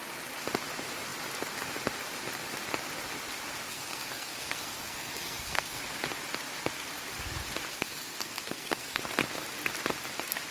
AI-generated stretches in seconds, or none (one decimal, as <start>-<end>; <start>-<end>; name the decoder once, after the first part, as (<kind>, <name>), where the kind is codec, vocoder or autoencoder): 3.7-5.8 (codec, SNAC); 7.7-9.0